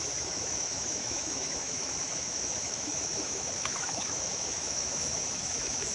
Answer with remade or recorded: remade